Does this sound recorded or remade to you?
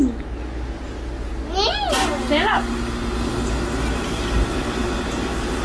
recorded